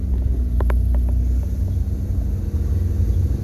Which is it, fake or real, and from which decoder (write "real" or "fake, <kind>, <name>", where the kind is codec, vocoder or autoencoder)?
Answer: real